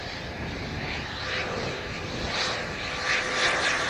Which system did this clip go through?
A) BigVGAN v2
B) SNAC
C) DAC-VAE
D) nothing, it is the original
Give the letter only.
D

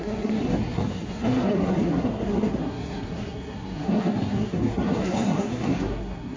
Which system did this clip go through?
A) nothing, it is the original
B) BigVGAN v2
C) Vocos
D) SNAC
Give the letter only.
D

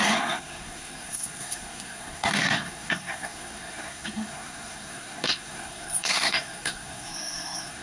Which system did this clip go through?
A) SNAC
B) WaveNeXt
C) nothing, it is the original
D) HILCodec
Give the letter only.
A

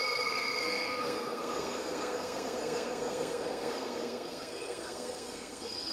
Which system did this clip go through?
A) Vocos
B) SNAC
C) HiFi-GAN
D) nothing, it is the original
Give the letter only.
B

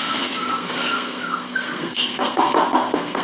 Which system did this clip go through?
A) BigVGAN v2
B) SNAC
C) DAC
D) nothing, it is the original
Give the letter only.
B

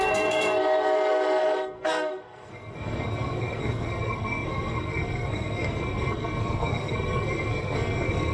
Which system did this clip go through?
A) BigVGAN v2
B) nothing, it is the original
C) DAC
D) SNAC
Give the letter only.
D